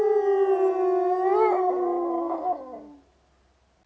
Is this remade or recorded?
recorded